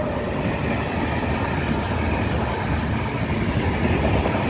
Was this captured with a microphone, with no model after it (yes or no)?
yes